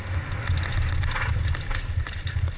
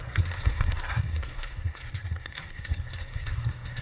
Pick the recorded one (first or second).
first